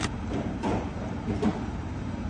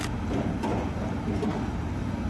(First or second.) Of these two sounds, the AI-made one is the first